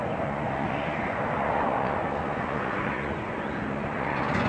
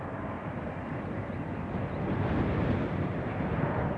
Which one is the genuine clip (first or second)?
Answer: second